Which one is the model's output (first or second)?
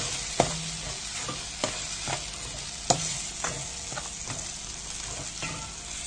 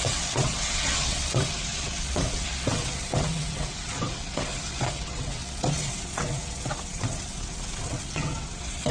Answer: second